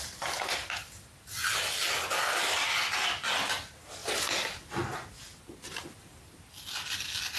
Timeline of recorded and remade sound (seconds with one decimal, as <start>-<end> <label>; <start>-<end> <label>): 0.0-7.4 recorded

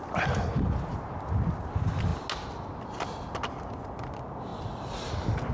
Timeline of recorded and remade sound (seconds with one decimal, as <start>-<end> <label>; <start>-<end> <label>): 0.0-5.5 recorded

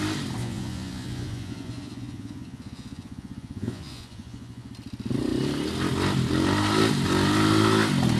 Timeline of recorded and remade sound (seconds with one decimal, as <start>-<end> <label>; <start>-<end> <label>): 0.0-0.4 recorded; 0.4-4.7 remade; 4.7-8.2 recorded

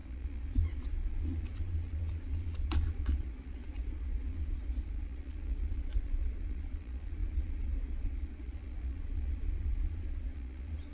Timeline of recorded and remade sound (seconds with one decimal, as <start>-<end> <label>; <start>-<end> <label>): 0.0-10.9 remade

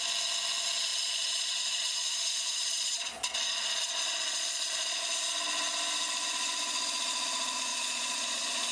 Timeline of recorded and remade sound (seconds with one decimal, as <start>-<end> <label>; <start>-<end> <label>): 0.0-0.9 recorded; 0.9-5.0 remade; 5.0-7.7 recorded; 7.7-8.7 remade

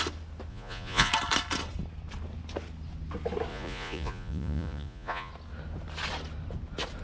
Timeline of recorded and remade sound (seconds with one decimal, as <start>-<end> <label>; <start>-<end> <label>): 0.0-0.5 recorded; 0.5-1.1 remade; 1.1-3.5 recorded; 3.5-5.3 remade; 5.3-7.0 recorded

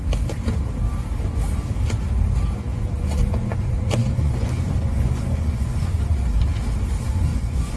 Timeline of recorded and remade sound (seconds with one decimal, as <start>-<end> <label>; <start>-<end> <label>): 0.0-2.7 recorded; 2.7-6.2 remade; 6.2-7.3 recorded; 7.3-7.8 remade